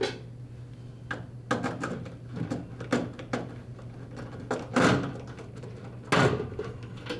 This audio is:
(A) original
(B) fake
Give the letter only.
A